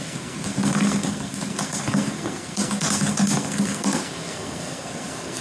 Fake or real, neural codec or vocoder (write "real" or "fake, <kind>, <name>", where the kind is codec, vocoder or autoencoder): fake, codec, SNAC